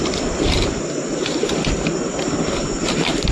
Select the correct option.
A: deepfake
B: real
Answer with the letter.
B